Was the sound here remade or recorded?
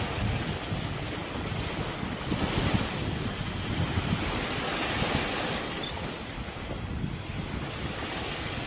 recorded